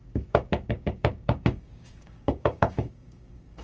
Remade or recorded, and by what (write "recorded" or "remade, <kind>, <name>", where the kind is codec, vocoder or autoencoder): remade, codec, DAC